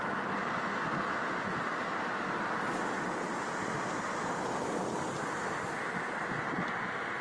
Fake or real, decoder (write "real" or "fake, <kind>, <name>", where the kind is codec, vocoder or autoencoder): real